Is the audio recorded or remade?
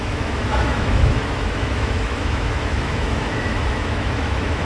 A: remade